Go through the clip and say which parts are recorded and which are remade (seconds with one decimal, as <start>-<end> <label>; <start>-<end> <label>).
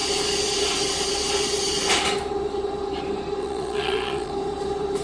0.0-3.4 recorded; 3.4-4.3 remade; 4.3-5.0 recorded